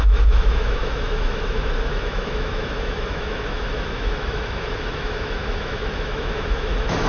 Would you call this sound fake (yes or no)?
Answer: yes